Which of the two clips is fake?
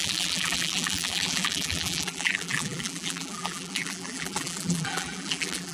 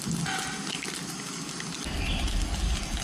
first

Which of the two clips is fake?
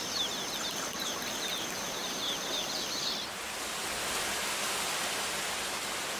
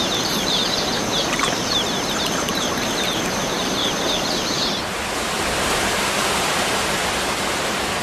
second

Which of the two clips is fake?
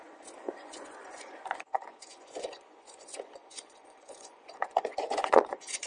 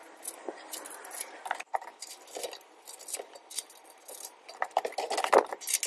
first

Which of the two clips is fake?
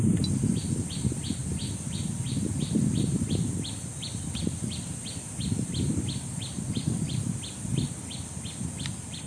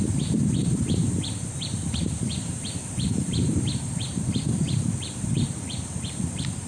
second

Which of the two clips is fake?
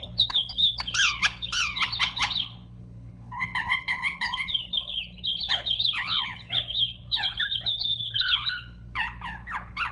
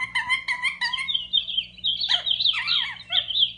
first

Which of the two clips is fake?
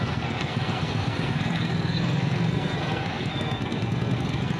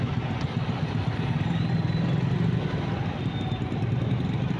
first